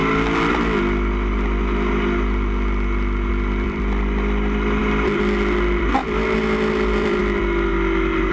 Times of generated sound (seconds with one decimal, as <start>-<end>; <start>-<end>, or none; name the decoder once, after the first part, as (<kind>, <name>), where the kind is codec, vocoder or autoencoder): 3.3-7.7 (vocoder, BigVGAN v2)